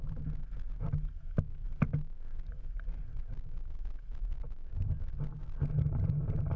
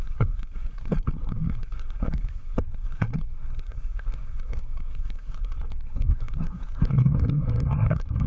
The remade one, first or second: second